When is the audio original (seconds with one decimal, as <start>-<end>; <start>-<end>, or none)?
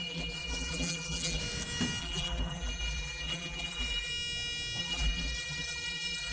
1.4-2.0; 4.1-4.8